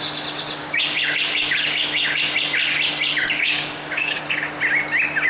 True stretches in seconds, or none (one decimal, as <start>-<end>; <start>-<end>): 0.0-0.6; 2.2-3.1; 4.2-5.3